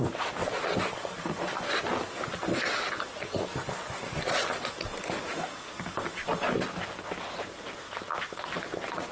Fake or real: real